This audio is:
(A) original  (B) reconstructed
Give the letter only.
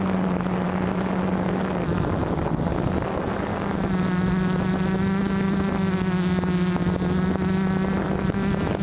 A